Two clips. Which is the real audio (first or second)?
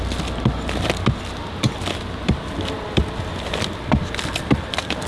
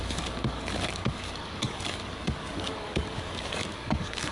first